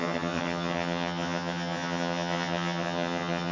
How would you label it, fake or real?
fake